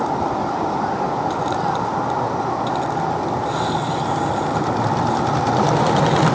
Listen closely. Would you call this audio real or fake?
real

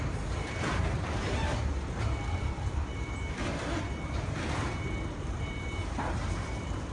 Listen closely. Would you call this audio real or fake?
fake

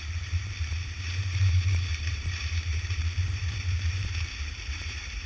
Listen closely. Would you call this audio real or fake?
fake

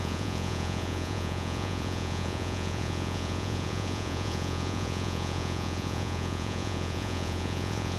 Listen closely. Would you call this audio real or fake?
fake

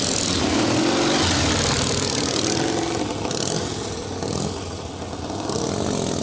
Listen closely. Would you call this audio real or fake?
real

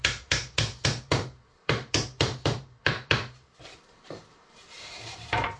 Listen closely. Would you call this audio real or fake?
fake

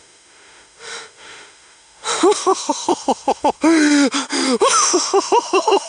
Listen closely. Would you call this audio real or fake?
fake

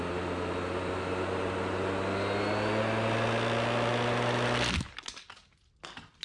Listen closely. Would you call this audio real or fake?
real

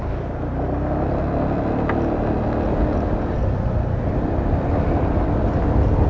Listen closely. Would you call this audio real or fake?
real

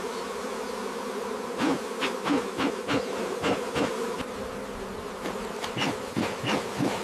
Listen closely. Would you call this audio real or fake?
real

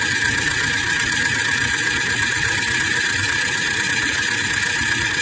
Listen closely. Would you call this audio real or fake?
fake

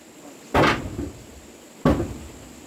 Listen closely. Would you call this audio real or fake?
real